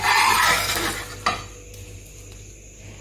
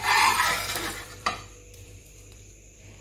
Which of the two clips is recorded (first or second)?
first